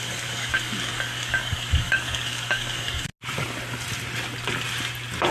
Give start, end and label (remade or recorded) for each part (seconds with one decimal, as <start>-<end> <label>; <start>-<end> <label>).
0.0-3.1 remade; 3.1-5.3 recorded